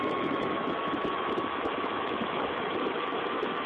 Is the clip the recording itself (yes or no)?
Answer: no